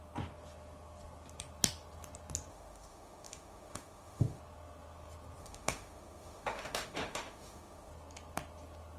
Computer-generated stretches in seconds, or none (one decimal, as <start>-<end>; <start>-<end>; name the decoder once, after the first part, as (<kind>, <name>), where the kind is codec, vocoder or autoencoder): 2.5-4.4 (autoencoder, DAC-VAE); 5.4-7.9